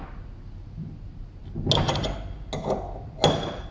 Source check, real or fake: real